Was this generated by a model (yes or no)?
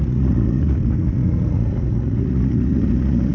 yes